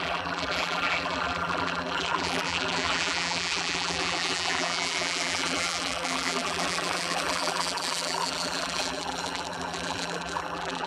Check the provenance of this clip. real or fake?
fake